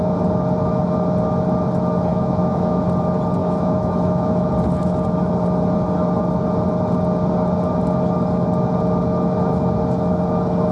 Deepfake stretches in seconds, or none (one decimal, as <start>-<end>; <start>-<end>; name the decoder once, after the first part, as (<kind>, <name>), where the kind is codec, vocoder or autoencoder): 2.1-2.8 (autoencoder, DAC-VAE); 3.4-4.5